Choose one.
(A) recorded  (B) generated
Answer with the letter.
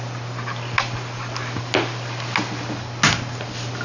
A